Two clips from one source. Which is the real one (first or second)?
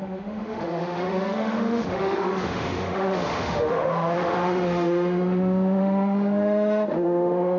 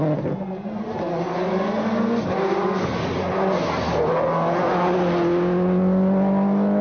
second